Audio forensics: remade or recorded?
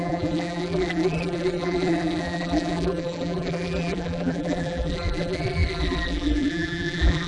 remade